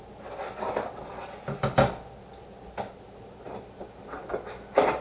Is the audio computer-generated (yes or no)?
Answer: no